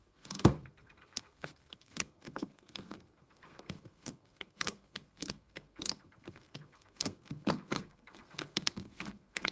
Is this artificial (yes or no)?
yes